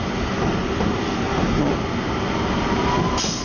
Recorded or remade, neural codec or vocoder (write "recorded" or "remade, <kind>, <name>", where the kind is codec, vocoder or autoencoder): recorded